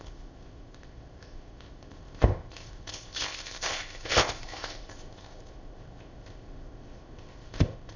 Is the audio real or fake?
fake